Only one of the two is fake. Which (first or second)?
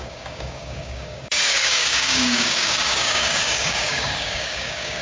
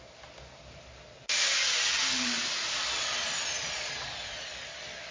first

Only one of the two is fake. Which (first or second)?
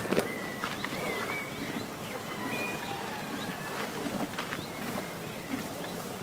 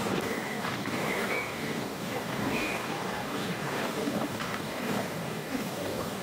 second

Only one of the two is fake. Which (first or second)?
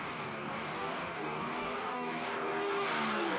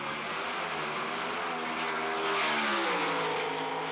first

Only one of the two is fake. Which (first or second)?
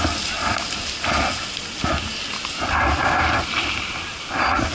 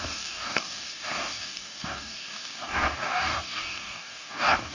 second